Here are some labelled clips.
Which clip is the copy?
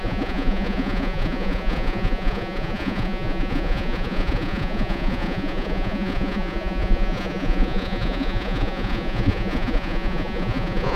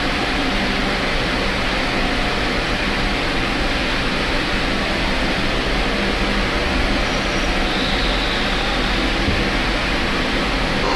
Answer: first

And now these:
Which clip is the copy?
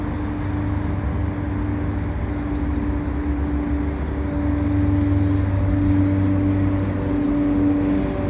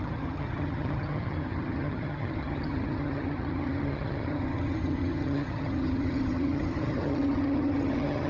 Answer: second